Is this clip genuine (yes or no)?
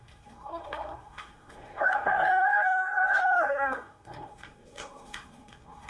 no